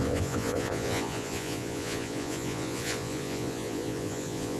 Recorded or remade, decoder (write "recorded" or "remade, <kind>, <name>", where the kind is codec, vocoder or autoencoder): remade, vocoder, Vocos